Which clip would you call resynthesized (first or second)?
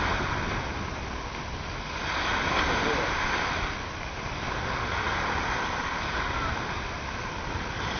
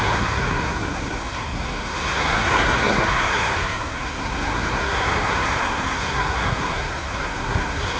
second